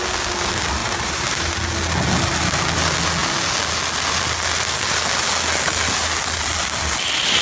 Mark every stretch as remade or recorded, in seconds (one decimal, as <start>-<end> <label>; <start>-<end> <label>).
0.0-0.8 recorded; 0.8-1.5 remade; 1.5-7.4 recorded